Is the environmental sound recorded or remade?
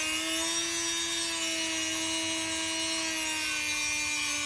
recorded